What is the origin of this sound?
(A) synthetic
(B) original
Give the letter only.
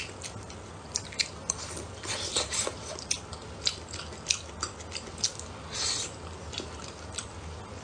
B